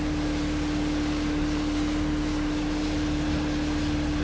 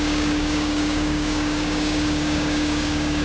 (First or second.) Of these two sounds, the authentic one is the first